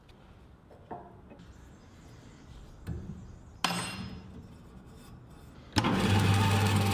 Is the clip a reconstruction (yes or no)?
no